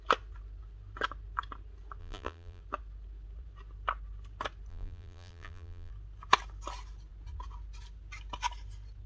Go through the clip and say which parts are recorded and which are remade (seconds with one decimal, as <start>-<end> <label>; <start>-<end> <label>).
0.0-2.0 recorded; 2.0-2.6 remade; 2.6-4.7 recorded; 4.7-5.9 remade; 5.9-9.1 recorded